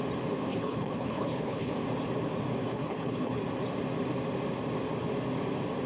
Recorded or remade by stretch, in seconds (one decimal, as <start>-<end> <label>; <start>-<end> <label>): 0.0-0.5 recorded; 0.5-1.7 remade; 1.7-2.7 recorded; 2.7-3.4 remade; 3.4-5.9 recorded